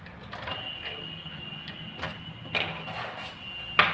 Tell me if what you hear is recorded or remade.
recorded